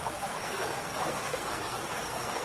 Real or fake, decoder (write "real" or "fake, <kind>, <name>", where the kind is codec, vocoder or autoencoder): fake, codec, SNAC